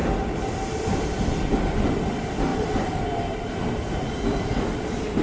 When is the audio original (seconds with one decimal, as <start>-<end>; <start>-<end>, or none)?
none